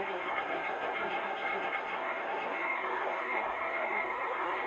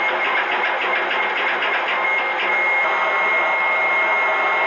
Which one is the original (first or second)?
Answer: second